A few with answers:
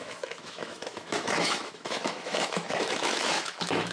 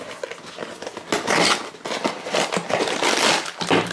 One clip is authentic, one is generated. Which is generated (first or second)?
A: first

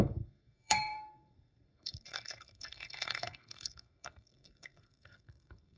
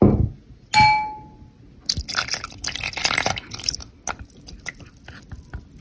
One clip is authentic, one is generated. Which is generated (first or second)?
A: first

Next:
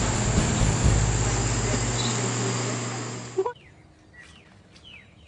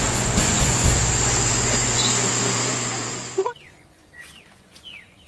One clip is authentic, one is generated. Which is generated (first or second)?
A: second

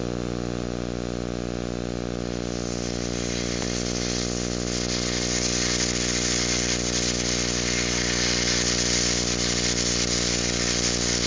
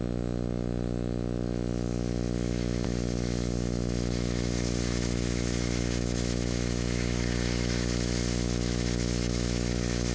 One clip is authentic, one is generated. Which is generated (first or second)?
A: second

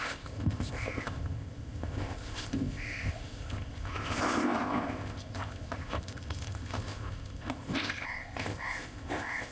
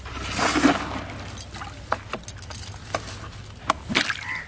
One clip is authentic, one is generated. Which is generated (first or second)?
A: first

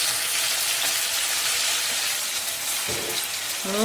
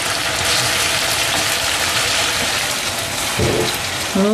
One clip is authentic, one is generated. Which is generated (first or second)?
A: second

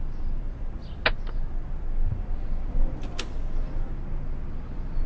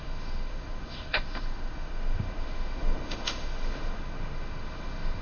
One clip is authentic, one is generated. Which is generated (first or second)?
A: second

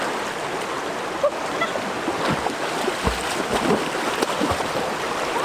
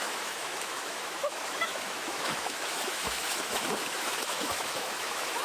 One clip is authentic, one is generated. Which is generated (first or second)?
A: second